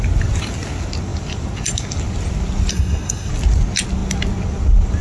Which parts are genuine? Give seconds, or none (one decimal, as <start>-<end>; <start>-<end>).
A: 0.0-2.7; 3.3-5.0